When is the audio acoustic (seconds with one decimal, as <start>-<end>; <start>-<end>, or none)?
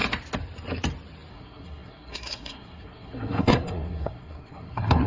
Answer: 0.0-1.3